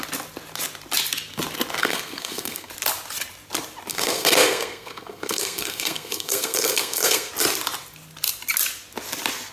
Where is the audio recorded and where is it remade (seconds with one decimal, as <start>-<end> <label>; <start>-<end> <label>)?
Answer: 0.0-1.8 recorded; 1.8-2.7 remade; 2.7-3.9 recorded; 3.9-7.3 remade; 7.3-9.5 recorded